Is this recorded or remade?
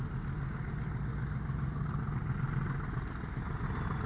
recorded